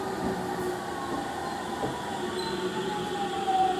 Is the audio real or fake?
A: real